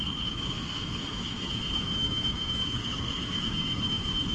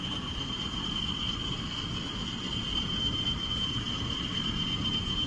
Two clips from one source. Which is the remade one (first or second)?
first